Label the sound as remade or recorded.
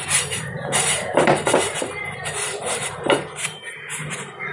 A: remade